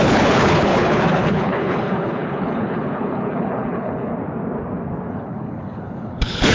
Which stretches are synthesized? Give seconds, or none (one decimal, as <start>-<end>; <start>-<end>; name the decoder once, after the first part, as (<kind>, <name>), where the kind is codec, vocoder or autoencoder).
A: 0.0-4.1 (codec, HILCodec); 5.1-6.5

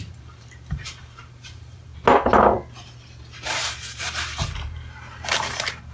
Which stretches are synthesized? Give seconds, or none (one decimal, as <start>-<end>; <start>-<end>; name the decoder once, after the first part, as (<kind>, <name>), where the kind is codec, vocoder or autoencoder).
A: 0.0-1.9 (vocoder, BigVGAN v2); 3.5-5.9

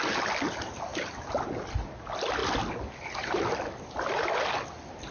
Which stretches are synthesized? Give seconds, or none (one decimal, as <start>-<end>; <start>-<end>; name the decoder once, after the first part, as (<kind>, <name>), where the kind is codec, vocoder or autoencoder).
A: none

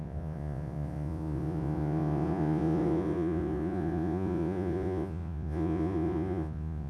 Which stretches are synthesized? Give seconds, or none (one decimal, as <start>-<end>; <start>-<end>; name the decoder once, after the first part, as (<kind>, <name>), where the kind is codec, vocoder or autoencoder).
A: 0.0-6.9 (vocoder, Vocos)

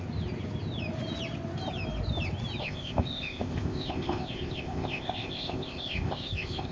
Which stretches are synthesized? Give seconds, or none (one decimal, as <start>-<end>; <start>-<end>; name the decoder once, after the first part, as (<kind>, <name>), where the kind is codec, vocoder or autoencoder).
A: 2.6-6.7 (codec, ZipCodec)